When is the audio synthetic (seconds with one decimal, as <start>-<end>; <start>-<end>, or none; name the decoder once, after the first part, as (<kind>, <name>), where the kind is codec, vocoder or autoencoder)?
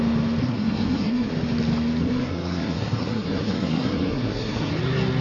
0.4-1.3 (codec, SNAC); 2.0-4.7